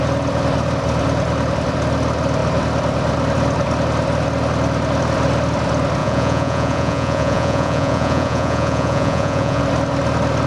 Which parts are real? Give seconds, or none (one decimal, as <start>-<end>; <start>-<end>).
0.0-6.0; 9.6-10.5